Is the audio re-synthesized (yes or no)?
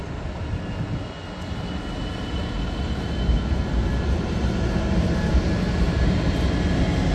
no